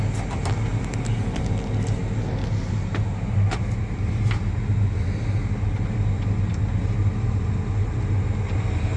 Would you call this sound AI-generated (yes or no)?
no